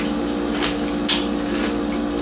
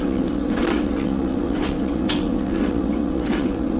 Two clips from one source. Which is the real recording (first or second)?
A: first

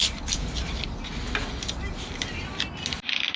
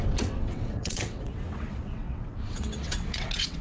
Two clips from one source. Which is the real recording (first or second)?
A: first